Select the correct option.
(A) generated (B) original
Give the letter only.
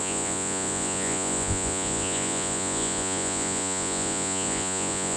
A